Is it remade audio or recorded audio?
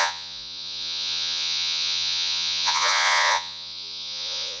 remade